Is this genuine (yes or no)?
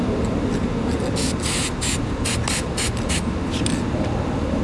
yes